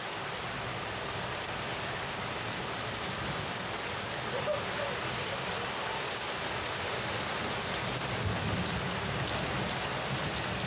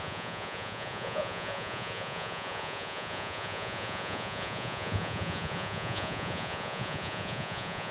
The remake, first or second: second